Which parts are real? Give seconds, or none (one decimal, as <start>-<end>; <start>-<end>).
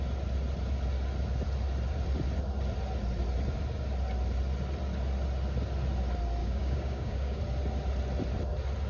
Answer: 0.0-6.4; 7.4-8.9